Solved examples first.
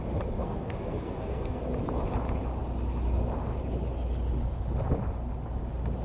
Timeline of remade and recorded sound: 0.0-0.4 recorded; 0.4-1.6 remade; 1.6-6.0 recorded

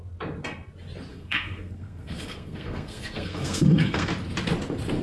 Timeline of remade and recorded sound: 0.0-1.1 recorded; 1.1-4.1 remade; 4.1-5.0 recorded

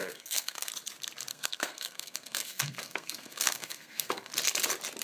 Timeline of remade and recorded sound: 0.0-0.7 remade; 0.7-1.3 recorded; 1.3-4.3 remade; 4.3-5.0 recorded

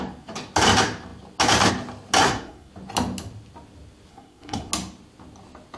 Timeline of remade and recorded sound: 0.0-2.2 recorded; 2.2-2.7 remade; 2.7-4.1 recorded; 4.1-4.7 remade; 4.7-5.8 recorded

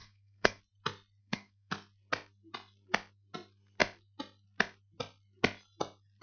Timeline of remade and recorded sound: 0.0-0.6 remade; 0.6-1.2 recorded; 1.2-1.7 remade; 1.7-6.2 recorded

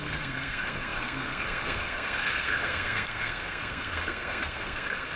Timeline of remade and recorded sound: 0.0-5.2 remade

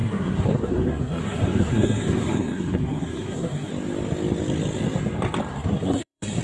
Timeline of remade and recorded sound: 0.0-3.7 remade; 3.7-5.5 recorded; 5.5-6.4 remade

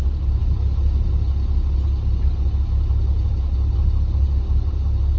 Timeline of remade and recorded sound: 0.0-5.2 recorded